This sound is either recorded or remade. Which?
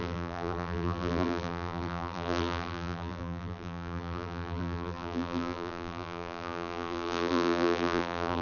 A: remade